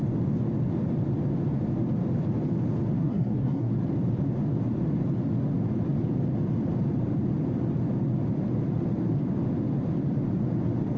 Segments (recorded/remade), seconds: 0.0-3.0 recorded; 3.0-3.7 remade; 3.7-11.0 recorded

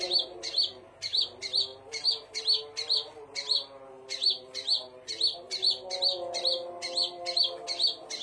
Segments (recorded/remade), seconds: 0.0-8.2 recorded

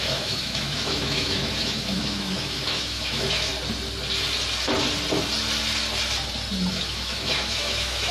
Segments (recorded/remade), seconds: 0.0-3.5 remade; 3.5-6.7 recorded; 6.7-8.1 remade

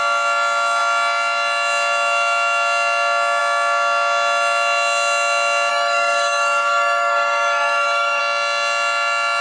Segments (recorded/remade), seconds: 0.0-5.7 recorded; 5.7-8.2 remade; 8.2-9.4 recorded